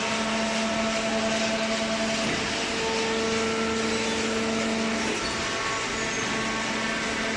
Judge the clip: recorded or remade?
recorded